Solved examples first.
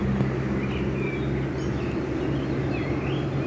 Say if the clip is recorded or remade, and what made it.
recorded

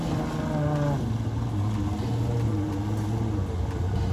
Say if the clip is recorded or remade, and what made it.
recorded